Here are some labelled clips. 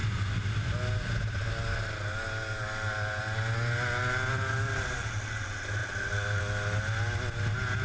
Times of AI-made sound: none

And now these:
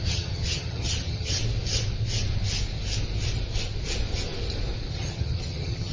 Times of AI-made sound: 0.0-1.4 (vocoder, HiFi-GAN); 4.9-5.9